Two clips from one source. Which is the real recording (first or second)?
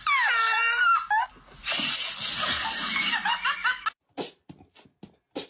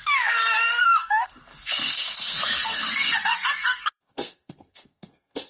first